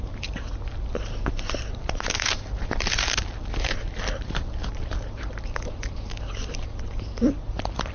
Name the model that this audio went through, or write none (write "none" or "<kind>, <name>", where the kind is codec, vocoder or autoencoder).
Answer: vocoder, BigVGAN v2